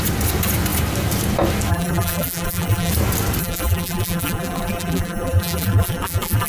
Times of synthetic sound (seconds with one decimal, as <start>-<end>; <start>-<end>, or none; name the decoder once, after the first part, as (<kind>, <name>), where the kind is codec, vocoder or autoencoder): 1.7-2.9 (vocoder, BigVGAN v2); 3.4-6.5